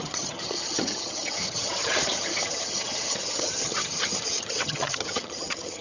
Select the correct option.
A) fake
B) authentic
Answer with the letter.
A